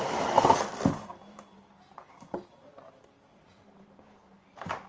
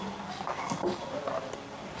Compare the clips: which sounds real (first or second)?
first